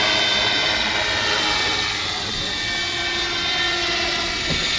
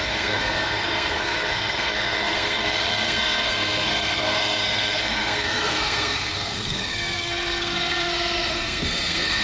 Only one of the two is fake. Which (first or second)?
second